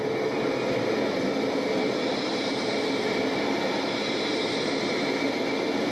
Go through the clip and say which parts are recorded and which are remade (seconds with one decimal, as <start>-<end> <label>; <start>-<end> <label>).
0.0-2.3 recorded; 2.3-4.5 remade; 4.5-5.9 recorded